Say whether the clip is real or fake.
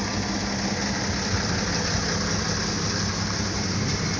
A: real